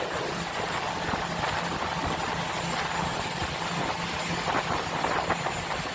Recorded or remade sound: recorded